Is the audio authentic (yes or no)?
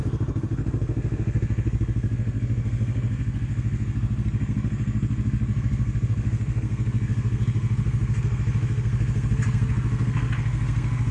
no